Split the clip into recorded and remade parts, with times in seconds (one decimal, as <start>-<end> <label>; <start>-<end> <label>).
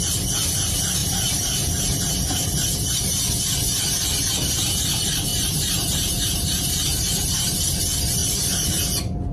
0.0-1.0 recorded; 1.0-3.0 remade; 3.0-5.3 recorded; 5.3-7.8 remade; 7.8-9.3 recorded